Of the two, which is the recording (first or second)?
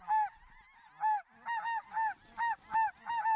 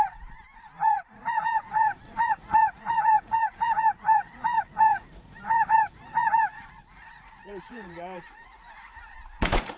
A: first